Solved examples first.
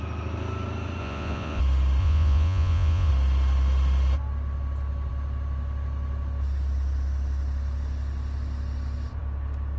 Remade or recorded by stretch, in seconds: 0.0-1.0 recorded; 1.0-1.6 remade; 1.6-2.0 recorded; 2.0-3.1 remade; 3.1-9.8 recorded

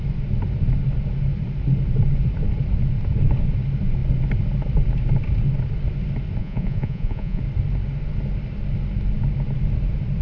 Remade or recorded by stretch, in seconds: 0.0-6.4 recorded; 6.4-7.4 remade; 7.4-10.2 recorded

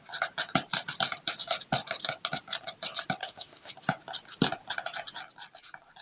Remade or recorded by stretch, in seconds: 0.0-3.2 recorded; 3.2-3.7 remade; 3.7-6.0 recorded

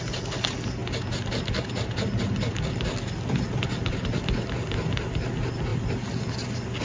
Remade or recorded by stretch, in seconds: 0.0-6.8 recorded

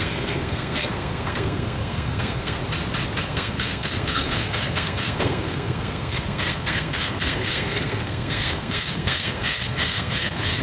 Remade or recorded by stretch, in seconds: 0.0-2.6 remade; 2.6-3.2 recorded; 3.2-10.6 remade

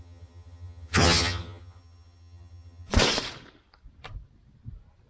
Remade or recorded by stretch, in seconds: 0.0-2.9 remade; 2.9-5.1 recorded

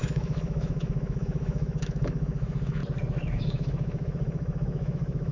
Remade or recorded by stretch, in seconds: 0.0-2.8 remade; 2.8-3.3 recorded; 3.3-5.3 remade